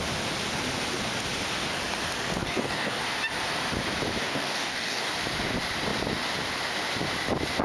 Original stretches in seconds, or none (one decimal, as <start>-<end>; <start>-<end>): 0.0-2.4; 3.0-4.2; 5.1-7.6